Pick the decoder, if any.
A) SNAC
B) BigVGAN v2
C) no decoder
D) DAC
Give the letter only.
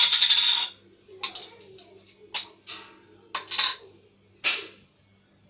C